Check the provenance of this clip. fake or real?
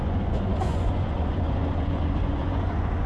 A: fake